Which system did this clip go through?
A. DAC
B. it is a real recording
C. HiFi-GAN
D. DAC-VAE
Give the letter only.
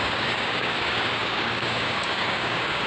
A